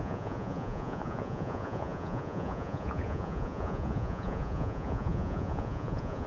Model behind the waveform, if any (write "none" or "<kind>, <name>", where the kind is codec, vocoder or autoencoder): vocoder, Vocos